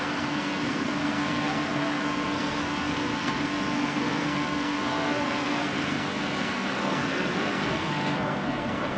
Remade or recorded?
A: remade